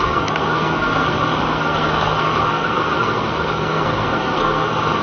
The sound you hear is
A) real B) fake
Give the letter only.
B